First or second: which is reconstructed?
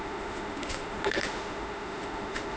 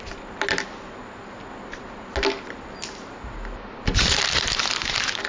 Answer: first